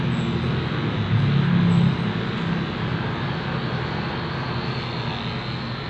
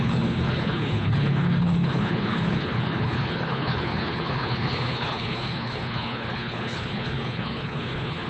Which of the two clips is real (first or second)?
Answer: first